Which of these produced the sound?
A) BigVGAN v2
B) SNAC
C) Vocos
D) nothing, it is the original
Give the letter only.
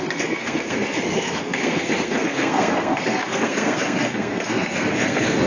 B